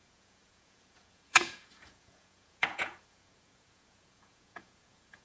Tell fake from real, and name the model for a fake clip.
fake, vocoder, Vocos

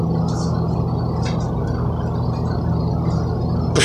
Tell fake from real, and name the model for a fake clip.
real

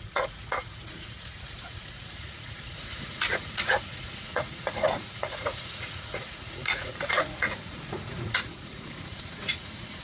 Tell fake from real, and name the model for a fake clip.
fake, vocoder, Vocos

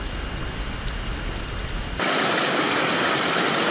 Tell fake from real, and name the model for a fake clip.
real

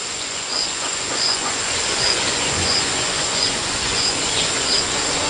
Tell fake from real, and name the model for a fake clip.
fake, vocoder, Vocos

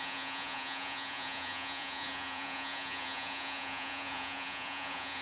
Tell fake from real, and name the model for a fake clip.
fake, vocoder, Vocos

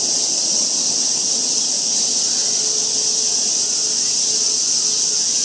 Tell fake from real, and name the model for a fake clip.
real